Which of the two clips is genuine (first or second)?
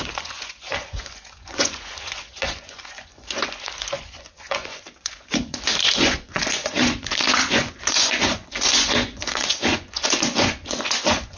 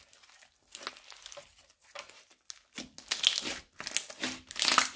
second